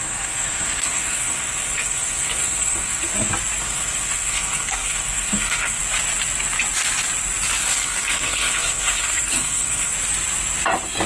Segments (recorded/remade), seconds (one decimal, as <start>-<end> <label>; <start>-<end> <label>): 0.0-3.1 remade; 3.1-3.6 recorded; 3.6-5.8 remade; 5.8-7.6 recorded; 7.6-9.9 remade; 9.9-11.1 recorded